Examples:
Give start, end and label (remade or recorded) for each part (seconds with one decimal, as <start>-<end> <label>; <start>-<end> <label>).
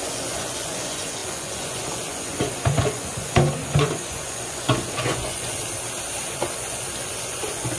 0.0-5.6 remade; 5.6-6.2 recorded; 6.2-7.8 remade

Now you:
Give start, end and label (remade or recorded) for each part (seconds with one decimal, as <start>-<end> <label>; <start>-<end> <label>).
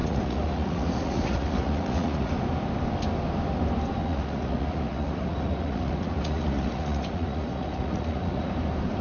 0.0-2.3 remade; 2.3-4.0 recorded; 4.0-8.5 remade; 8.5-9.0 recorded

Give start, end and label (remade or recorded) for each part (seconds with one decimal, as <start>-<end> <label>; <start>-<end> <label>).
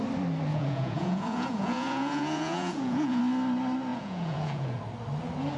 0.0-0.5 recorded; 0.5-3.2 remade; 3.2-3.9 recorded; 3.9-4.8 remade; 4.8-5.6 recorded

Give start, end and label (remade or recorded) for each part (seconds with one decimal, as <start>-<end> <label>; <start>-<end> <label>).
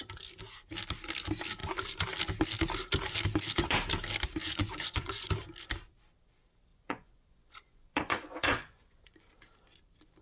0.0-4.4 recorded; 4.4-5.3 remade; 5.3-6.7 recorded; 6.7-9.3 remade; 9.3-10.2 recorded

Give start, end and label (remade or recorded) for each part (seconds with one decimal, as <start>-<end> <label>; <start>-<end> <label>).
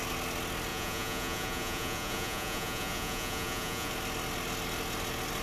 0.0-0.7 recorded; 0.7-3.9 remade; 3.9-5.4 recorded